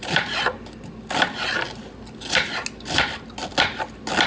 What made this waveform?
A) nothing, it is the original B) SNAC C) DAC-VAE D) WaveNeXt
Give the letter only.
A